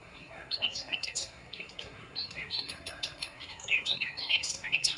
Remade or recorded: remade